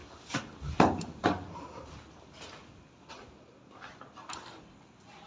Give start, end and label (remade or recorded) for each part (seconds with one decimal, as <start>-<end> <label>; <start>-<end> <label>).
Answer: 0.0-5.3 recorded